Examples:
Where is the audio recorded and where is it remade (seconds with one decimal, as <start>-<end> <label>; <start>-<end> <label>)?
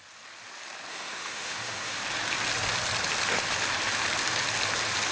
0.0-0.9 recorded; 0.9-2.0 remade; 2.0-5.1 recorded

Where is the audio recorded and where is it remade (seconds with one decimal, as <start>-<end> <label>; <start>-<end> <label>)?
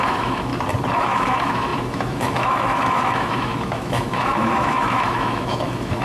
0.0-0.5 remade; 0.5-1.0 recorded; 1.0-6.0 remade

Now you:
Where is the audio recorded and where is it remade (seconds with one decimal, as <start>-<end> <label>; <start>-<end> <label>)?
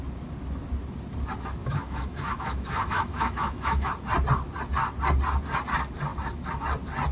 0.0-1.6 recorded; 1.6-3.9 remade; 3.9-7.1 recorded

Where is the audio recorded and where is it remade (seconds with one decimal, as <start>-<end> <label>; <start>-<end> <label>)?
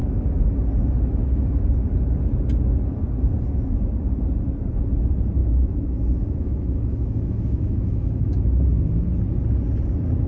0.0-5.4 recorded; 5.4-8.4 remade; 8.4-10.3 recorded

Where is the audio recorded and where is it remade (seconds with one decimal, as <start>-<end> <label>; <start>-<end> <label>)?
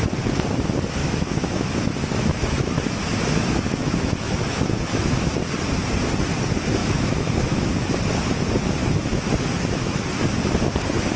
0.0-1.0 recorded; 1.0-5.4 remade; 5.4-6.8 recorded; 6.8-7.9 remade; 7.9-8.8 recorded; 8.8-10.0 remade; 10.0-11.2 recorded